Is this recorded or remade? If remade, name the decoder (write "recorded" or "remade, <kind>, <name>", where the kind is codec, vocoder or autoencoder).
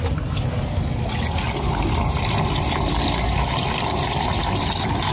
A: recorded